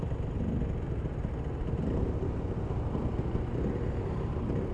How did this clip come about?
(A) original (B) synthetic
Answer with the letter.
A